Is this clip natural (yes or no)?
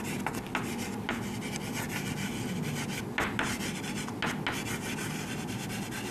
yes